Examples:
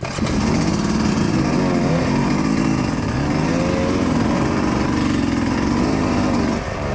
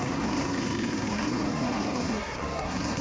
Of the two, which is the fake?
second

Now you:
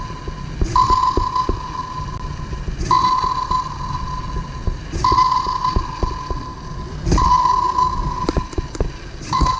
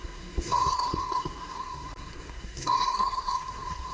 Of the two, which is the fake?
second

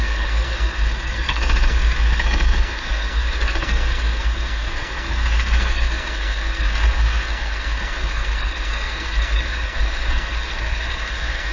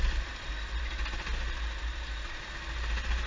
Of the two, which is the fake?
first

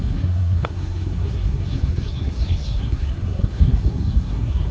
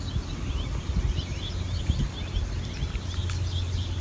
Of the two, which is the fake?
first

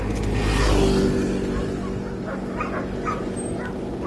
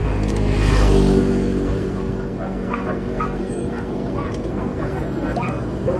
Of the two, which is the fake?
second